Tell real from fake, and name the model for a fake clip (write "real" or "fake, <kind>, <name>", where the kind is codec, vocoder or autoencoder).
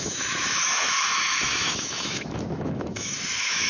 fake, autoencoder, DAC-VAE